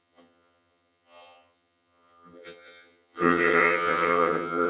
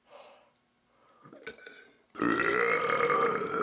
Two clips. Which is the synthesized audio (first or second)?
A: first